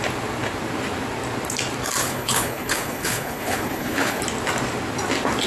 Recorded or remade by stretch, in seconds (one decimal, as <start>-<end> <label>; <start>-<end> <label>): 0.0-2.0 recorded; 2.0-4.2 remade; 4.2-5.5 recorded